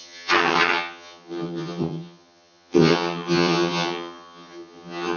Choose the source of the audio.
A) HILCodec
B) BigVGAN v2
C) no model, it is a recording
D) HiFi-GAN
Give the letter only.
D